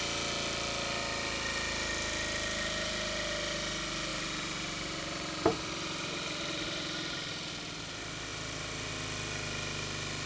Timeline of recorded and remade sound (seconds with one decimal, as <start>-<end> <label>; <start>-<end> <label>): 0.0-4.1 recorded; 4.1-7.5 remade; 7.5-8.3 recorded; 8.3-8.9 remade; 8.9-10.3 recorded